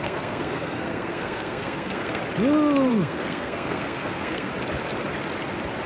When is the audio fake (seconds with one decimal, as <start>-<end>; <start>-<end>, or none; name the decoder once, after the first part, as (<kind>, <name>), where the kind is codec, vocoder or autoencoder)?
0.0-2.2 (codec, SNAC); 2.9-4.5